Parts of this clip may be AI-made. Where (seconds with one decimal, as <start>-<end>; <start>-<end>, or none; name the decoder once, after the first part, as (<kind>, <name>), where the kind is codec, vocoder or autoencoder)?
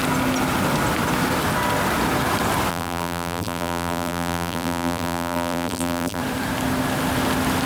2.7-6.2 (vocoder, BigVGAN v2)